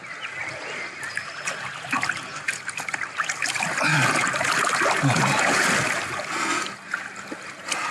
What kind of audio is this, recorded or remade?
recorded